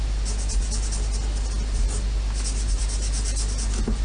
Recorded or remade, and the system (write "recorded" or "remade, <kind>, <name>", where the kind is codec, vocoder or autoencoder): recorded